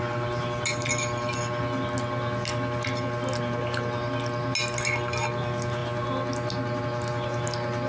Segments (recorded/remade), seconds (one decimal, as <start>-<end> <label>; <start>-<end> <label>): 0.0-7.9 recorded